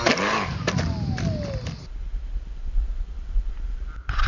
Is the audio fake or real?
real